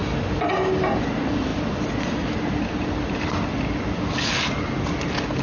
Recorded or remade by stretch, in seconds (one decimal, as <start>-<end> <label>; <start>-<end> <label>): 0.0-5.4 recorded